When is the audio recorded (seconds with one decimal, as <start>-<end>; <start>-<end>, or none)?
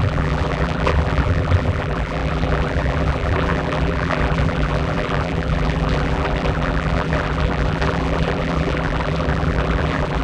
none